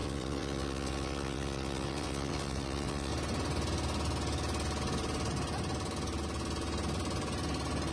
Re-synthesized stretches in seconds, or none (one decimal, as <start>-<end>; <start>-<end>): 0.0-3.1